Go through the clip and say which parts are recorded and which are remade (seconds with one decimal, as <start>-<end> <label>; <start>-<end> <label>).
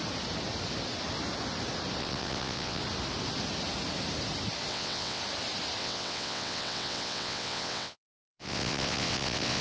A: 0.0-2.0 recorded; 2.0-2.8 remade; 2.8-4.7 recorded; 4.7-5.2 remade; 5.2-5.8 recorded; 5.8-9.6 remade